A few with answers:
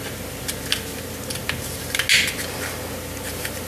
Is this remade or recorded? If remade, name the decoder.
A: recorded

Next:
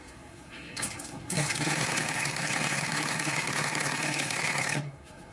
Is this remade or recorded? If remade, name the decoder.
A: remade, codec, SNAC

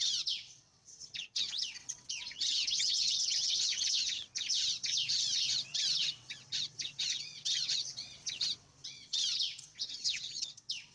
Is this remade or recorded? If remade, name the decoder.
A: remade, vocoder, WaveNeXt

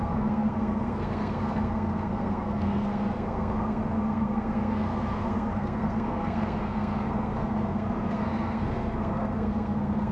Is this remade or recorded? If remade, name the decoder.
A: remade, codec, SNAC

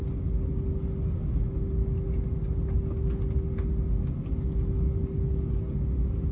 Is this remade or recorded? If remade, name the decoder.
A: recorded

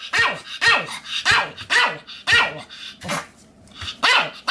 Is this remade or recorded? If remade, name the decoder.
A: recorded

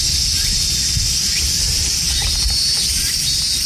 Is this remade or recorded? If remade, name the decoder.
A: recorded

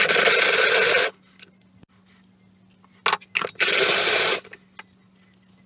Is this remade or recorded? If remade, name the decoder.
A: recorded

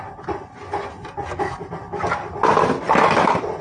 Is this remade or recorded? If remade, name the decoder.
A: recorded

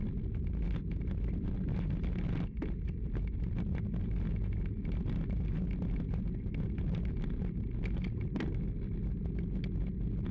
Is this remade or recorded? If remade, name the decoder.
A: recorded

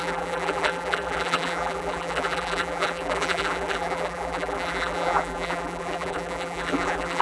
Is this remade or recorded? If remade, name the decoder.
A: remade, vocoder, BigVGAN v2